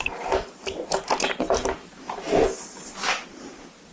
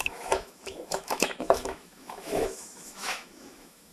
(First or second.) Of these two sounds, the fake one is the second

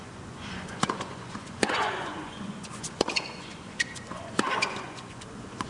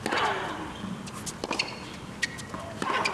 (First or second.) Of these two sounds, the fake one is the first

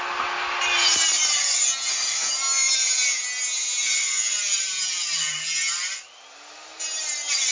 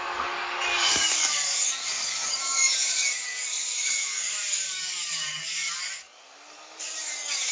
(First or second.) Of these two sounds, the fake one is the second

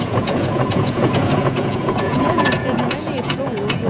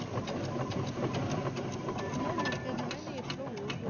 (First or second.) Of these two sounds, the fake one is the first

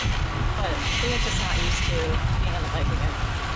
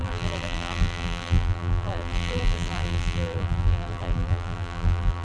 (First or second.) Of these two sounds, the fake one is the second